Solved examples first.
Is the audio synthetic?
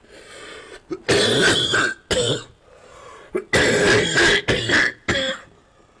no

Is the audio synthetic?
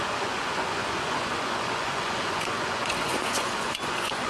yes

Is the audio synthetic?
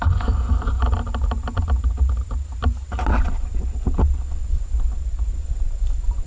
yes